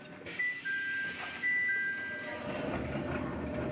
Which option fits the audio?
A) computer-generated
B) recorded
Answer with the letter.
B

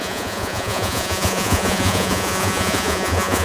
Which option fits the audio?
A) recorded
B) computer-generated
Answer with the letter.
B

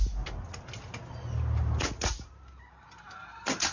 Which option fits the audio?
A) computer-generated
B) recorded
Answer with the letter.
B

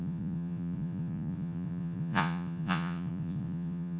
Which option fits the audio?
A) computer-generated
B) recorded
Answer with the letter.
A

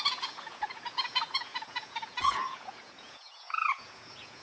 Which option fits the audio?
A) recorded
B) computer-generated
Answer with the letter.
B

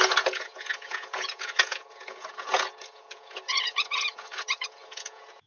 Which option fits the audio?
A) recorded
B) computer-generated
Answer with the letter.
B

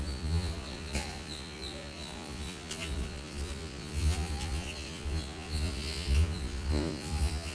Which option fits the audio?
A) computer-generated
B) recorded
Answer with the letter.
A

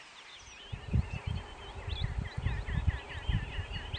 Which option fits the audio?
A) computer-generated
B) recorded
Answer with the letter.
B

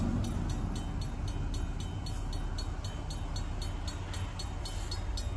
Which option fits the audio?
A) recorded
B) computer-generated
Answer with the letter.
A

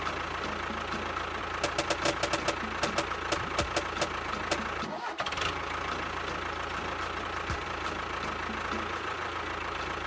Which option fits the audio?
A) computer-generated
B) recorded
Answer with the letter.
B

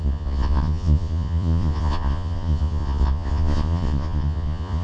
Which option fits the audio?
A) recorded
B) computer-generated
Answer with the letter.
B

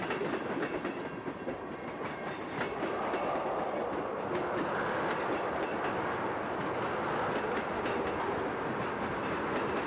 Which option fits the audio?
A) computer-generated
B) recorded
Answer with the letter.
B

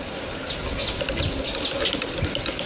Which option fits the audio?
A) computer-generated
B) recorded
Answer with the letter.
B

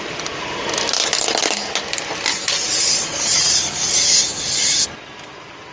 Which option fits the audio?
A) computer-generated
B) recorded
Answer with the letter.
B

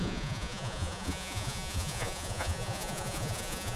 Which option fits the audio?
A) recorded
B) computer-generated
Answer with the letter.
B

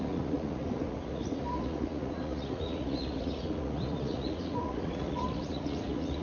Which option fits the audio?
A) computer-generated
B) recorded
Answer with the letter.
A